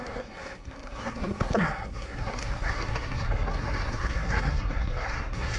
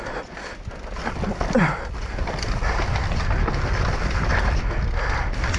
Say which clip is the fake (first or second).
first